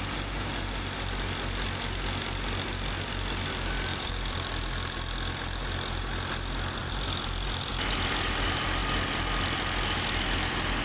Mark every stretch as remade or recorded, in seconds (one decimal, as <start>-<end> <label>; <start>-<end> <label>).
0.0-3.9 recorded; 3.9-4.6 remade; 4.6-6.8 recorded; 6.8-7.7 remade; 7.7-10.8 recorded